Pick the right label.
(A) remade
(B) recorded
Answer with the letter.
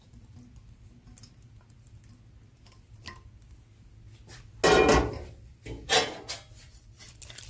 B